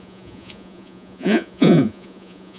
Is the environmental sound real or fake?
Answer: fake